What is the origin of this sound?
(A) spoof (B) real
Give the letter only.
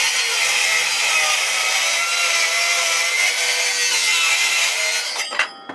B